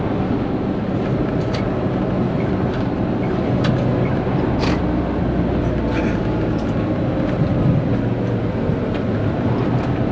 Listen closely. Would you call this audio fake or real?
real